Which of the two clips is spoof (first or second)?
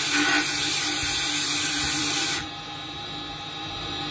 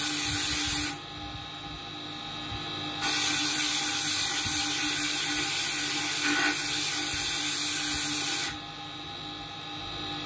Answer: first